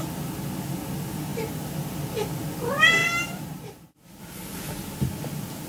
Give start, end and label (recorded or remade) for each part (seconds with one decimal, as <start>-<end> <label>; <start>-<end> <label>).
0.0-3.0 recorded; 3.0-4.2 remade; 4.2-5.7 recorded